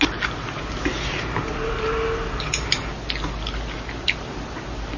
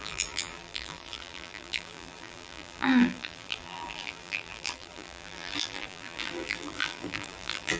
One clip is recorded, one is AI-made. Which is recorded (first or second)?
first